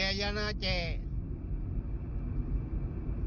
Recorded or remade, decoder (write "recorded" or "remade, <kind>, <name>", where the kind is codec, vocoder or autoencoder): recorded